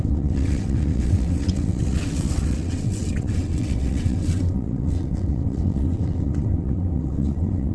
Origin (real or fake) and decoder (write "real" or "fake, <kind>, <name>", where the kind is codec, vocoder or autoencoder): fake, vocoder, WaveNeXt